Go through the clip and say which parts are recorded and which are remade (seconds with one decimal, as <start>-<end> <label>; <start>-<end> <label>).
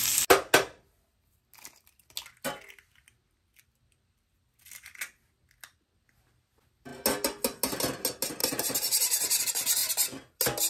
0.0-8.4 recorded; 8.4-9.4 remade; 9.4-10.7 recorded